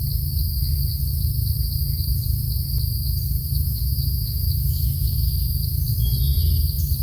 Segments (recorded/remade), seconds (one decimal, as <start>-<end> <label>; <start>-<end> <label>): 0.0-3.4 recorded; 3.4-5.3 remade; 5.3-7.0 recorded